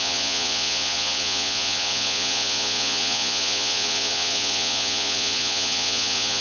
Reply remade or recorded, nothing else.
remade